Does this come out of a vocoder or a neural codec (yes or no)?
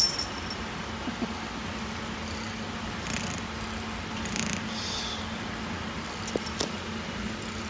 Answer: no